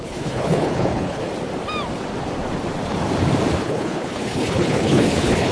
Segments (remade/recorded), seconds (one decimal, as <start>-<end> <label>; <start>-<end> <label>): 0.0-1.2 remade; 1.2-3.6 recorded; 3.6-5.5 remade